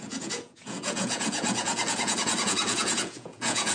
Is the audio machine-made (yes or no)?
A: yes